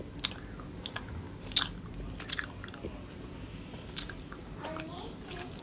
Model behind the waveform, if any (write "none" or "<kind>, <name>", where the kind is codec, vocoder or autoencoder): none